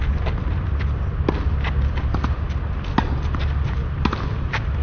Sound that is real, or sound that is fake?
real